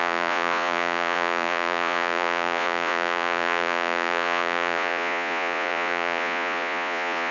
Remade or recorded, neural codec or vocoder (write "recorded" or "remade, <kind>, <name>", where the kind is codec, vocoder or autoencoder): remade, vocoder, Vocos